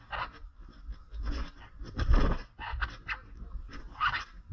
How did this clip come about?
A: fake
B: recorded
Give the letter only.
B